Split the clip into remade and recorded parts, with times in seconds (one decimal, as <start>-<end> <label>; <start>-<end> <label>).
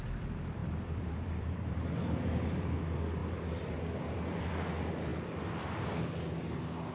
0.0-0.6 recorded; 0.6-2.8 remade; 2.8-3.2 recorded; 3.2-4.5 remade; 4.5-6.9 recorded